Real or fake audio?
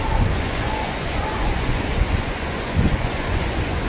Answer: fake